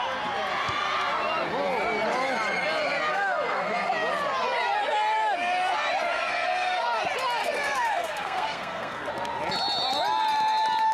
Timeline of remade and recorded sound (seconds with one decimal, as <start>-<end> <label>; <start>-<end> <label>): 0.0-3.1 recorded; 3.1-3.9 remade; 3.9-6.1 recorded; 6.1-7.0 remade; 7.0-7.4 recorded; 7.4-9.1 remade; 9.1-10.9 recorded